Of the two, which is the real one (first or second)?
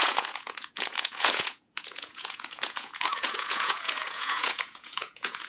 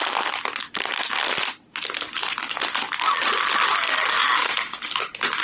second